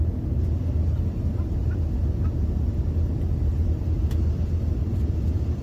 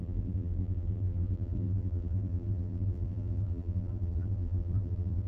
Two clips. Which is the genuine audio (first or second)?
first